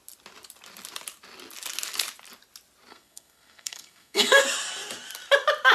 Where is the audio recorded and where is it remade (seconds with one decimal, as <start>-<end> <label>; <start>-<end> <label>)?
0.0-2.9 recorded; 2.9-4.4 remade; 4.4-5.7 recorded